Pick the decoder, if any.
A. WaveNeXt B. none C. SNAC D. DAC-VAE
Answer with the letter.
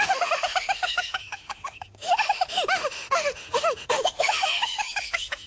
D